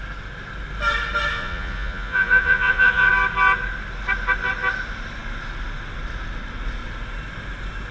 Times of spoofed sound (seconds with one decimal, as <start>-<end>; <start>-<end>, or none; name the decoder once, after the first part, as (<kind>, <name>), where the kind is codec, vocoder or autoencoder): 1.3-3.1 (vocoder, Vocos)